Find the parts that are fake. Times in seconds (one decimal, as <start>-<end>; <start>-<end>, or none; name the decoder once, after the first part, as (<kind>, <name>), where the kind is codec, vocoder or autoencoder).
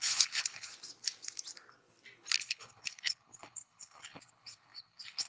0.0-0.7 (codec, HILCodec); 2.4-5.3